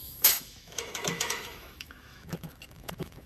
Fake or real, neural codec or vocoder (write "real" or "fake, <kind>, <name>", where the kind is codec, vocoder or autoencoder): fake, autoencoder, DAC-VAE